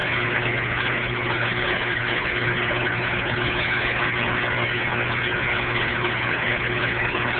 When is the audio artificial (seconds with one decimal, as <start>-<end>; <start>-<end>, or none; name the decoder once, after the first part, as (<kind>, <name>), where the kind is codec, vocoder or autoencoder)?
0.0-4.0 (codec, HILCodec); 5.5-7.4